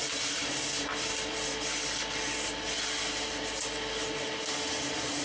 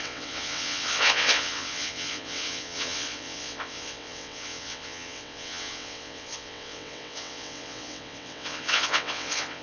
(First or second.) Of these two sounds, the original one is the first